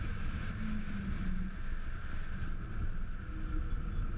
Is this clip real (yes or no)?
yes